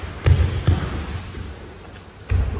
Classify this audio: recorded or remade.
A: recorded